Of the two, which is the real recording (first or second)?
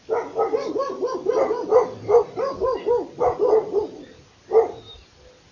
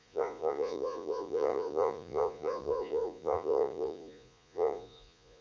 first